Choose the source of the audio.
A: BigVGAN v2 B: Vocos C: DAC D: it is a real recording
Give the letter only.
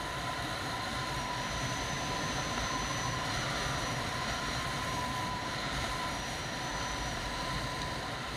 D